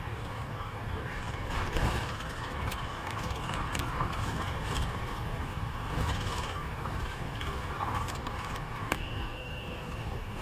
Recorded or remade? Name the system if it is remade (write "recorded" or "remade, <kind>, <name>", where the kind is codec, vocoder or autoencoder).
remade, codec, DAC